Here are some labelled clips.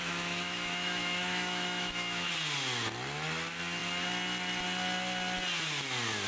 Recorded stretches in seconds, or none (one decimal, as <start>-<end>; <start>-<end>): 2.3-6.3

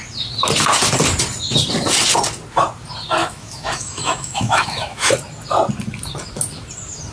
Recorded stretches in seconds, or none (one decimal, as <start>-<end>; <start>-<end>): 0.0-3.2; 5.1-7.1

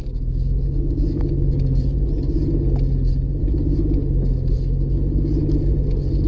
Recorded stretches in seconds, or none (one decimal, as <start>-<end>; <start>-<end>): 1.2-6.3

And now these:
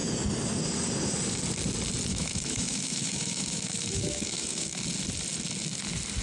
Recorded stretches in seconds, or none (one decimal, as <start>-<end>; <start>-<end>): 0.0-2.1; 4.8-6.2